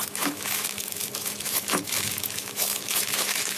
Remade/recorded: remade